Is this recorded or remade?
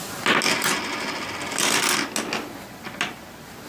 recorded